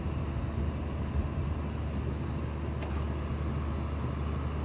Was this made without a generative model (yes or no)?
yes